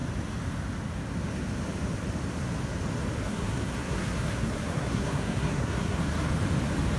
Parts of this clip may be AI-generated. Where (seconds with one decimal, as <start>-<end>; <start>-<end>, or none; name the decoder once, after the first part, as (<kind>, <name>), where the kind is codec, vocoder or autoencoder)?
3.2-6.3 (codec, SNAC)